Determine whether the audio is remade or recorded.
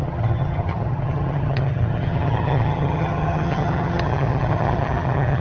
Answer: remade